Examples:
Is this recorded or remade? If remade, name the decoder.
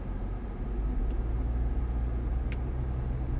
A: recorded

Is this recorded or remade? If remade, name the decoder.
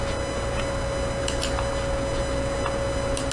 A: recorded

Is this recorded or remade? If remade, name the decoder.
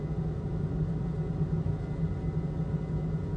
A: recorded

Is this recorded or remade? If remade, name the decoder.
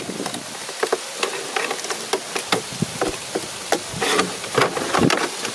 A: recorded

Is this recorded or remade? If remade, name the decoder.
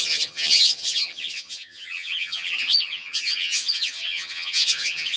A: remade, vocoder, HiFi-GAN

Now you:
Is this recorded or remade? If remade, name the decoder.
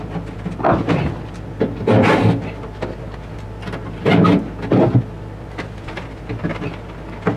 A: recorded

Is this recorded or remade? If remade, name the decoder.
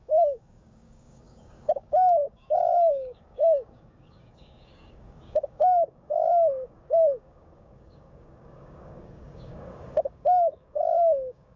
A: remade, codec, DAC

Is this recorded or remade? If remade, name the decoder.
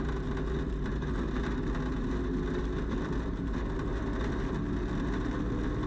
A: recorded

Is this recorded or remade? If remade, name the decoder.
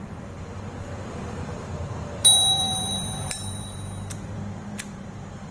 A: remade, vocoder, BigVGAN v2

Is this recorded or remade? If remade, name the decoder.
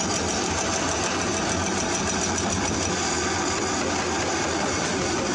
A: recorded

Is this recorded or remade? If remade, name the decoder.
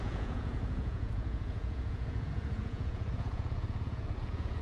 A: remade, vocoder, Vocos